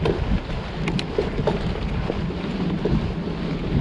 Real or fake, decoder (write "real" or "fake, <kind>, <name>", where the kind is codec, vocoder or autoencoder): real